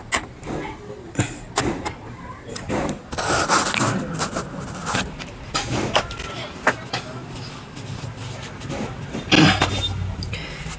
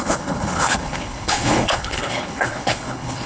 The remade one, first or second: second